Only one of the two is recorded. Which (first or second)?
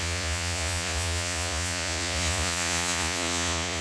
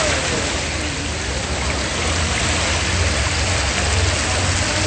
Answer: second